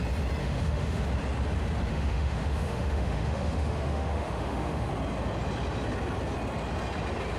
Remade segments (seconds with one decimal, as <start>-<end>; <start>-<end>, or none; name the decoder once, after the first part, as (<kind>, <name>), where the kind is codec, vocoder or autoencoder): 0.4-1.0 (autoencoder, DAC-VAE); 1.9-4.9